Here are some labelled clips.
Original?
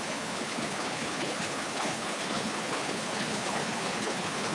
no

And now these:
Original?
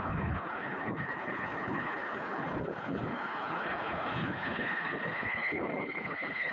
no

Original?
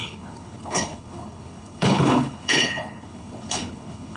no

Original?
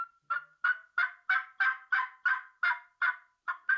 yes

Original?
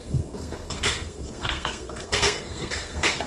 no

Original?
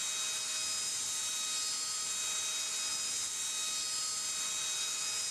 yes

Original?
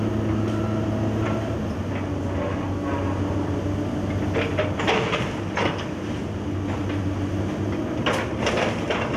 yes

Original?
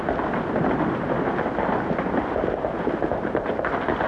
yes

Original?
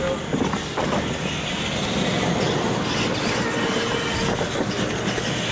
yes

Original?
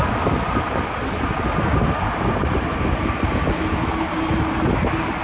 yes